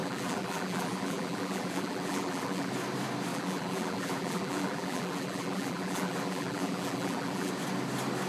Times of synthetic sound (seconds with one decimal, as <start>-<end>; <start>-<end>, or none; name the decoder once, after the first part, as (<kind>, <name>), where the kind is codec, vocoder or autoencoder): 0.0-2.7 (vocoder, BigVGAN v2); 3.3-7.5